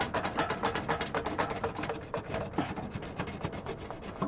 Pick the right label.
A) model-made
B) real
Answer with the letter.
B